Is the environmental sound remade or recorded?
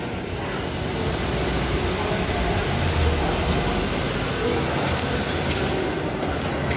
recorded